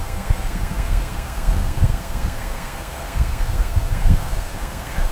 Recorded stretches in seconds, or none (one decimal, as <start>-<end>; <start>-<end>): none